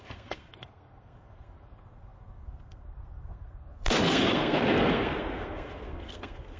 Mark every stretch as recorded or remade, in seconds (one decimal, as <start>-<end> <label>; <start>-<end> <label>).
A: 0.0-6.6 remade